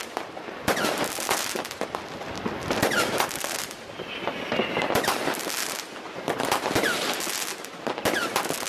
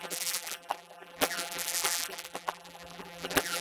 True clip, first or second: first